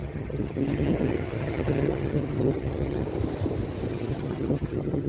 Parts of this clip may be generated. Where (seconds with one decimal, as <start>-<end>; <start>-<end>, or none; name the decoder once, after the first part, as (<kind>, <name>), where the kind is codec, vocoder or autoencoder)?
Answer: 0.0-3.1 (vocoder, HiFi-GAN); 3.9-5.1